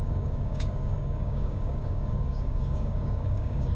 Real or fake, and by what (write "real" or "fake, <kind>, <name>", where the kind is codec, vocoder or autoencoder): fake, codec, DAC